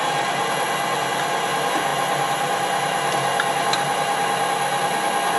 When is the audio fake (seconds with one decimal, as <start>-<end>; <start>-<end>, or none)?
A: none